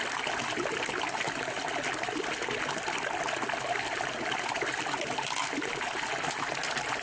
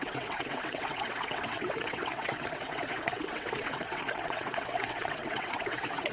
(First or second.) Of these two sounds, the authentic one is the first